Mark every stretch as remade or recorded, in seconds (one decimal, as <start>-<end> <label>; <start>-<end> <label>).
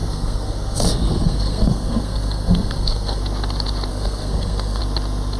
0.0-3.2 remade; 3.2-3.9 recorded; 3.9-4.8 remade; 4.8-5.4 recorded